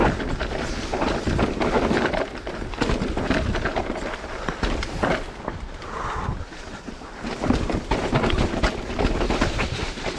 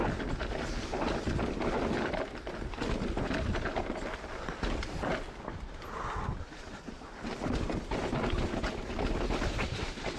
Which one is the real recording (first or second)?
second